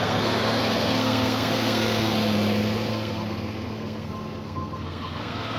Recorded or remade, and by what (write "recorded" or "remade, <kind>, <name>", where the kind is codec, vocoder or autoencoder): remade, codec, SNAC